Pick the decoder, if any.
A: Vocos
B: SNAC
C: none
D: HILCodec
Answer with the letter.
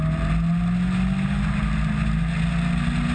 C